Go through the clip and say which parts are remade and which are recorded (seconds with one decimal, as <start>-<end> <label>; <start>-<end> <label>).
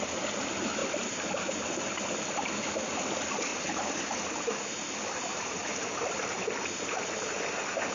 0.0-0.8 recorded; 0.8-1.9 remade; 1.9-3.5 recorded; 3.5-7.4 remade; 7.4-7.9 recorded